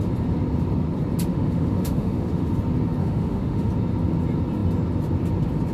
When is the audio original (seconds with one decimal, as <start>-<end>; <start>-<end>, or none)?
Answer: 0.0-1.3; 2.5-3.0; 3.7-5.7